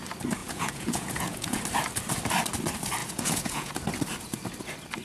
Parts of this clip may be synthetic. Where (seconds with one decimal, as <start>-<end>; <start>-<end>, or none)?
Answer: 0.4-1.6; 3.0-3.7